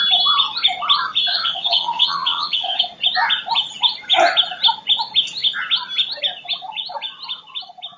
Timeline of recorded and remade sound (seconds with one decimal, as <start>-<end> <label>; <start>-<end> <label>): 0.0-1.3 recorded; 1.3-2.8 remade; 2.8-8.0 recorded